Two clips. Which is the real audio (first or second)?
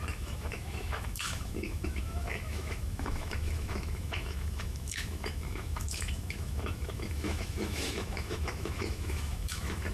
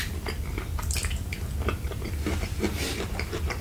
second